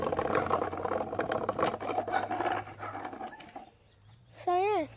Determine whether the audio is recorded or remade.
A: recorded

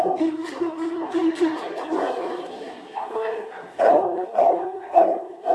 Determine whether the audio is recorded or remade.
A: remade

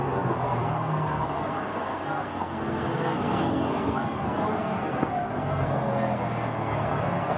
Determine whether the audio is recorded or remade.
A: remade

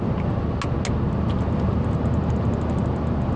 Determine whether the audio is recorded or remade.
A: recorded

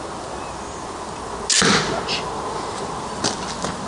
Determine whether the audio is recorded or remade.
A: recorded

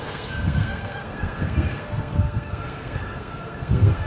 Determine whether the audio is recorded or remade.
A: remade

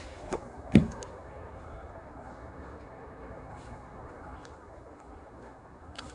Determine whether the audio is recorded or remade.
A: remade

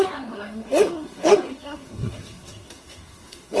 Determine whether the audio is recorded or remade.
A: remade